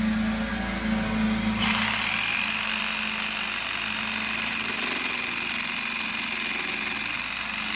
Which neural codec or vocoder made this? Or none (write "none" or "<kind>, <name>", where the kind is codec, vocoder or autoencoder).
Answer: none